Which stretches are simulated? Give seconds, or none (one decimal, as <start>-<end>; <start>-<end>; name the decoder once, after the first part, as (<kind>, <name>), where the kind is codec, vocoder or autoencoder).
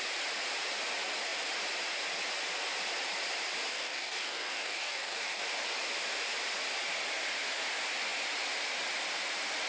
3.7-5.4 (codec, DAC)